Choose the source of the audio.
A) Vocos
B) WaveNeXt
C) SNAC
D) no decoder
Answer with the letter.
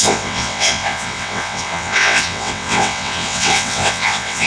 B